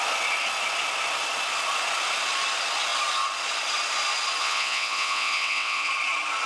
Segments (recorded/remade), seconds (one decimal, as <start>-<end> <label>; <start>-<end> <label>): 0.0-4.4 recorded; 4.4-5.9 remade; 5.9-6.5 recorded